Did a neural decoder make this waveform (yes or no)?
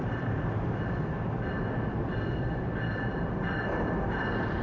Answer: no